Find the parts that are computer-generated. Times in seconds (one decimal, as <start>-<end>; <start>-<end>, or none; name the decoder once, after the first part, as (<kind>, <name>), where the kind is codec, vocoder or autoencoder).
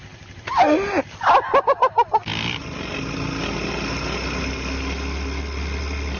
none